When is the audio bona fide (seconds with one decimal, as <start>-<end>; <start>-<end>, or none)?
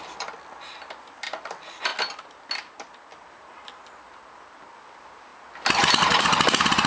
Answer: 0.0-6.9